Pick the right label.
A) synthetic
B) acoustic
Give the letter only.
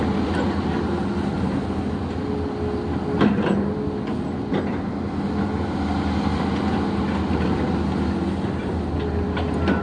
B